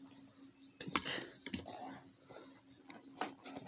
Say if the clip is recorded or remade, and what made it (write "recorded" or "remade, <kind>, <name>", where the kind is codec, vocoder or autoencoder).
recorded